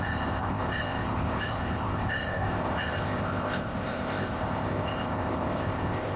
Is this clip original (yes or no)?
no